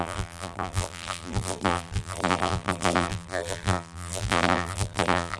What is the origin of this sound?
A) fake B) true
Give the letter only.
A